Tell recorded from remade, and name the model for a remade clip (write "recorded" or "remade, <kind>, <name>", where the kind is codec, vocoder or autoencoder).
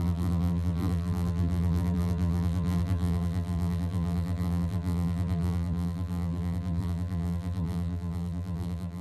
remade, vocoder, BigVGAN v2